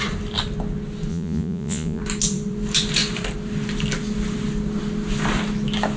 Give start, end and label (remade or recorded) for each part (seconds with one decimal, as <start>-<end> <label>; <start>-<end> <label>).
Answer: 0.0-1.1 recorded; 1.1-2.0 remade; 2.0-6.0 recorded